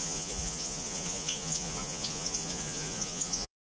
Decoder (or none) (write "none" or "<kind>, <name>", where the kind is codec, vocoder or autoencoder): vocoder, Vocos